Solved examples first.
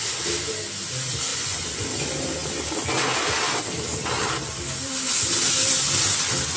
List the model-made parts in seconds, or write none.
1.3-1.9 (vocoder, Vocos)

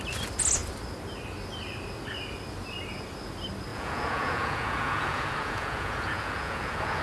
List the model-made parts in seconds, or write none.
3.7-7.0 (vocoder, Vocos)

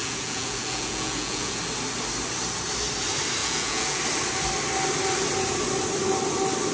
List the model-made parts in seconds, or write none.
0.0-1.6 (vocoder, Vocos); 3.4-4.0

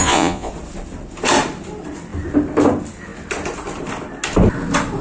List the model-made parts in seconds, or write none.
0.0-0.5 (vocoder, Vocos)

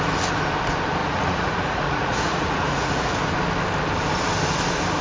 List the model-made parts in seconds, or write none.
1.0-3.2 (vocoder, Vocos)

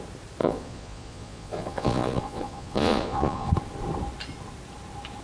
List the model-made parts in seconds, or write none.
0.4-3.5 (vocoder, Vocos)